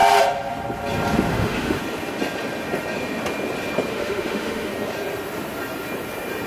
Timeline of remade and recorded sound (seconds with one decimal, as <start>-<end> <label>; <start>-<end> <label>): 0.0-1.3 recorded; 1.3-1.8 remade; 1.8-3.9 recorded; 3.9-4.7 remade; 4.7-6.5 recorded